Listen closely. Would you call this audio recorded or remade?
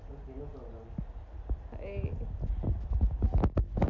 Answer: recorded